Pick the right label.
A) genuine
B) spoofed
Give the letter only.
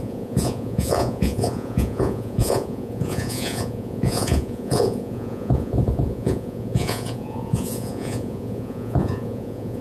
B